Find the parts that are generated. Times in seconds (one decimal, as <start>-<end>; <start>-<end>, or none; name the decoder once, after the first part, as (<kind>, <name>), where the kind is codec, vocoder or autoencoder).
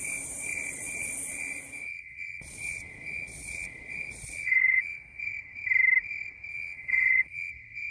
0.5-5.2 (vocoder, Vocos); 6.5-7.5